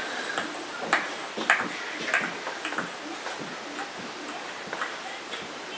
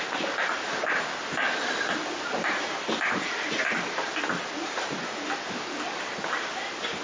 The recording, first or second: first